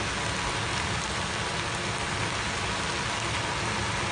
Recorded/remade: recorded